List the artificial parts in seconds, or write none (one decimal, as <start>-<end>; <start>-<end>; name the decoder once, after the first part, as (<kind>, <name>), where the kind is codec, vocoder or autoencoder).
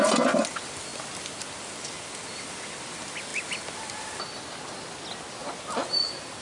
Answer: 0.9-2.8 (vocoder, BigVGAN v2); 5.4-6.4